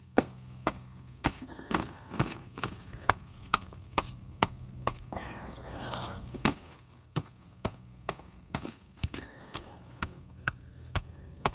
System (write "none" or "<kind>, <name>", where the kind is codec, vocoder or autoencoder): codec, SNAC